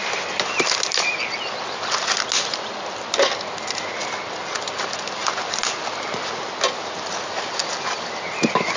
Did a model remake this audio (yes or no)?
no